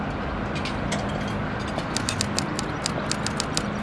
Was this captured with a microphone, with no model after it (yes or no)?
yes